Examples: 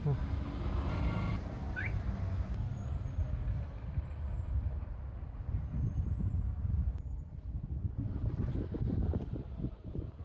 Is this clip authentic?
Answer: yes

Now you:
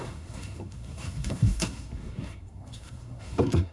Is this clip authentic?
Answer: no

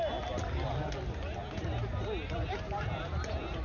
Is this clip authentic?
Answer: yes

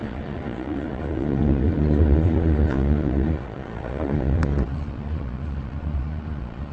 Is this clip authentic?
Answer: no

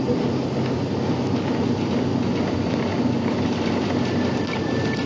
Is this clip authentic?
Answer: yes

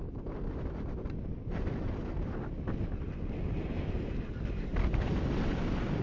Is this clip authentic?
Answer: yes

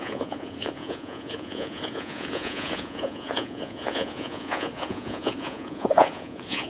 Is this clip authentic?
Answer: no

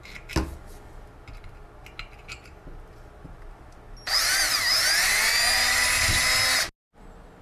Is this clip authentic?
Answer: yes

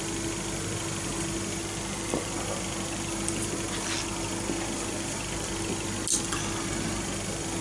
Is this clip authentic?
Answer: yes